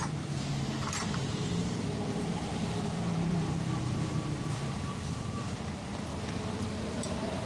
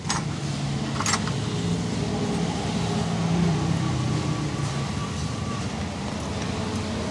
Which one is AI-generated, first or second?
first